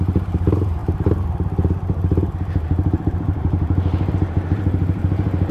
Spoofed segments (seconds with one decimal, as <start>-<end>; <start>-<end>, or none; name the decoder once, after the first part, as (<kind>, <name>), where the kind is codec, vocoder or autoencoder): 0.0-5.5 (vocoder, BigVGAN v2)